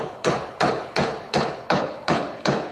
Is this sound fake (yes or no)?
yes